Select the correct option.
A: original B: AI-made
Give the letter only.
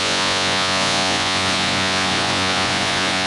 B